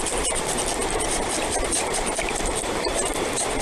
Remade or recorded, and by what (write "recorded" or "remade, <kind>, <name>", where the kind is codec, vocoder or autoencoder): remade, vocoder, BigVGAN v2